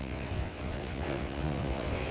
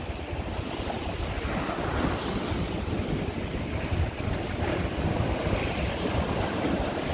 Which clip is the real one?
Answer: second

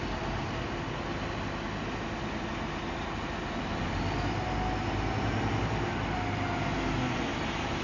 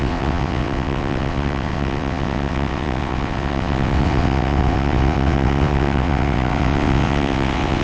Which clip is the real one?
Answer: first